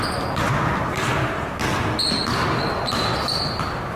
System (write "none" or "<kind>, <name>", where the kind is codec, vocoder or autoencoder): none